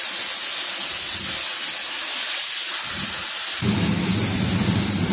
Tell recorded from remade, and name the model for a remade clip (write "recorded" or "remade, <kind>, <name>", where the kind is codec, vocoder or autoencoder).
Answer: recorded